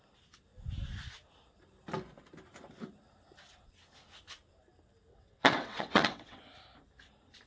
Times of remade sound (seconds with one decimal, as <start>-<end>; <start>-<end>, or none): 5.1-6.4